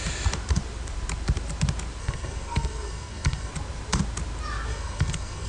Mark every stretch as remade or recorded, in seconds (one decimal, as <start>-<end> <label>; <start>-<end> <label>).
0.0-2.0 recorded; 2.0-3.5 remade; 3.5-4.7 recorded; 4.7-5.5 remade